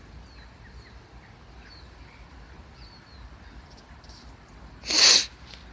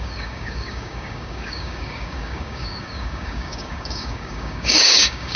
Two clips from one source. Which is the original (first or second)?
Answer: first